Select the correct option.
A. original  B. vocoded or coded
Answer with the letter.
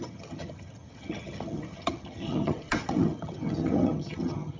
B